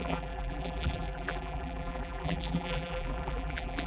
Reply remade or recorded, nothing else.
remade